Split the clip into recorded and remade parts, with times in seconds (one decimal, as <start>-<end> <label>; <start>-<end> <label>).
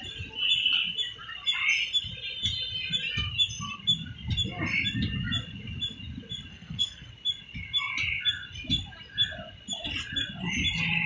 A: 0.0-6.5 recorded; 6.5-7.1 remade; 7.1-11.1 recorded